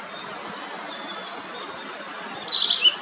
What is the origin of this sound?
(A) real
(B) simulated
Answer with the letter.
A